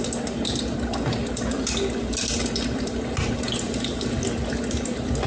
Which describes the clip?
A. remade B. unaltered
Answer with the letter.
B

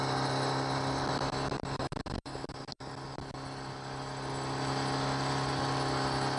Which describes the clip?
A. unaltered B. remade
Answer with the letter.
A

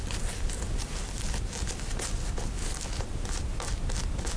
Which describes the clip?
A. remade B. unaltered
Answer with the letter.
B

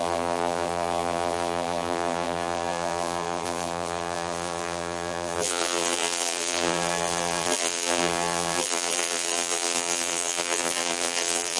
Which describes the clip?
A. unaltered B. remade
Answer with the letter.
B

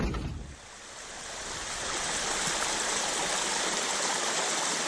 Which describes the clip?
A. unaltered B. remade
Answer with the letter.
A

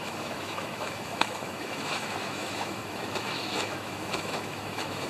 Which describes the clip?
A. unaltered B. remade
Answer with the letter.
B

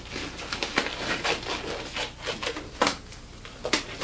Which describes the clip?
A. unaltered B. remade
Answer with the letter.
A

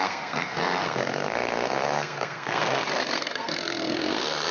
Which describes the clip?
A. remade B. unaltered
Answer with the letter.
A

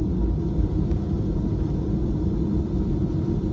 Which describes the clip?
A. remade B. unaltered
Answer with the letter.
B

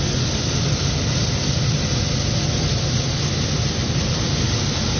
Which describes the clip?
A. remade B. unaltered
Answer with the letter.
B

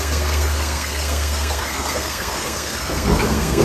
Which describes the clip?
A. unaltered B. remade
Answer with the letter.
B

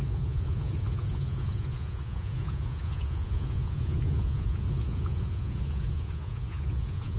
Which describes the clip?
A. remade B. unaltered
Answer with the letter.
A